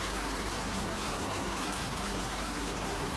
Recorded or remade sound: remade